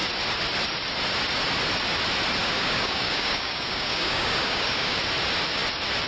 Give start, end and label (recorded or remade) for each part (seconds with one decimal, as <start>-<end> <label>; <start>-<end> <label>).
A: 0.0-2.4 recorded; 2.4-5.0 remade; 5.0-6.1 recorded